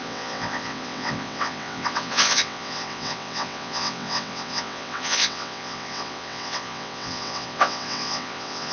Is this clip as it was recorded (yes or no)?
no